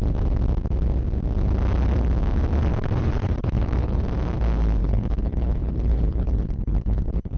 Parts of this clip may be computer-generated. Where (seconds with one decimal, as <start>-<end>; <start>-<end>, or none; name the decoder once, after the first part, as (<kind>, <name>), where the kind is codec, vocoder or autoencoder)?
2.7-4.0 (codec, HILCodec); 4.8-7.4